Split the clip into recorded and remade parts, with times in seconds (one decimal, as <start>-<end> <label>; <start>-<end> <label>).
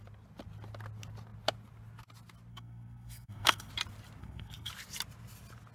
0.0-2.5 recorded; 2.5-3.7 remade; 3.7-4.2 recorded; 4.2-4.7 remade; 4.7-5.7 recorded